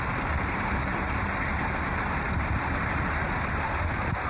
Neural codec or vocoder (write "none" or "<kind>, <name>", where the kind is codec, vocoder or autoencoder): vocoder, BigVGAN v2